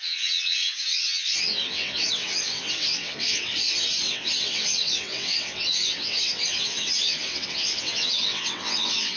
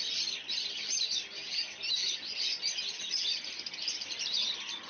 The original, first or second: second